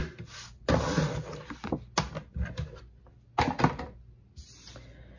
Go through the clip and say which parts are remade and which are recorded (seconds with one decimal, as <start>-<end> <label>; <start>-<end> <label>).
0.0-5.2 recorded